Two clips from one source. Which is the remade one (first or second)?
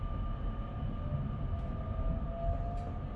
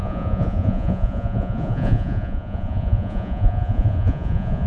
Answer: second